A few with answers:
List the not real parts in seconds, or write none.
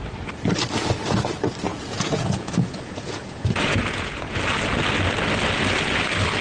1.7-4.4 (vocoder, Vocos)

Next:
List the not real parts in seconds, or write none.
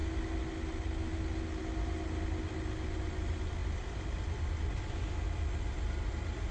none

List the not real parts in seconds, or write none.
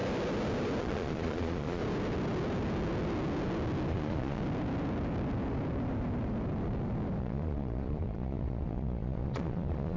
0.8-1.8 (vocoder, Vocos); 3.9-4.4; 7.2-10.0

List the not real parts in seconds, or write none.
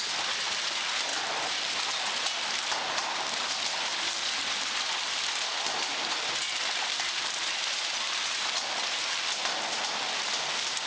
none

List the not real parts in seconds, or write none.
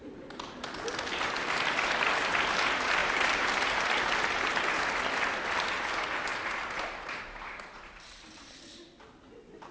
3.0-3.5 (vocoder, BigVGAN v2); 6.3-8.5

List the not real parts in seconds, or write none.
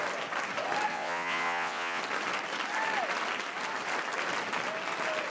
0.9-2.0 (vocoder, WaveNeXt)